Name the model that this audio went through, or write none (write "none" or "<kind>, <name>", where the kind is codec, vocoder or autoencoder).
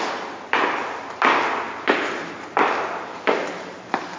vocoder, BigVGAN v2